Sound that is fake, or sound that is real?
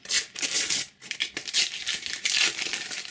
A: real